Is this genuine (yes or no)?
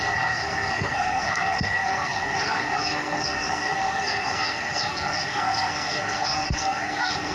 no